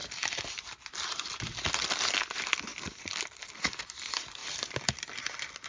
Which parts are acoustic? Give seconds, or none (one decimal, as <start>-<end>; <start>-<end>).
0.0-4.4; 5.3-5.7